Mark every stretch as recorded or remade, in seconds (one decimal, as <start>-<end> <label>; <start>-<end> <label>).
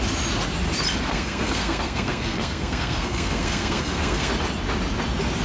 0.0-1.1 recorded; 1.1-4.3 remade; 4.3-5.4 recorded